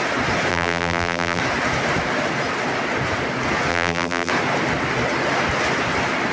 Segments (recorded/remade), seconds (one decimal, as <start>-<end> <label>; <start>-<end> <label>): 0.0-0.5 recorded; 0.5-1.4 remade; 1.4-3.7 recorded; 3.7-4.3 remade; 4.3-6.3 recorded